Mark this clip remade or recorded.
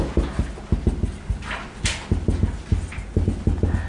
recorded